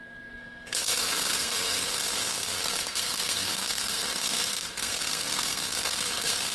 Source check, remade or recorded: remade